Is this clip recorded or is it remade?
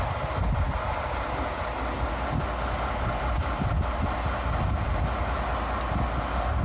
recorded